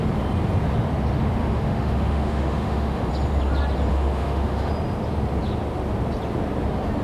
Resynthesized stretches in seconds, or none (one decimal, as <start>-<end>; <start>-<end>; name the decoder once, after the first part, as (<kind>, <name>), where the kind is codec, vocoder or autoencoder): 1.4-3.1 (autoencoder, DAC-VAE); 3.9-4.7